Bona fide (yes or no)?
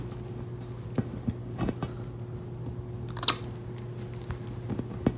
yes